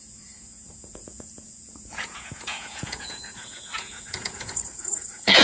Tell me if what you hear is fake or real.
fake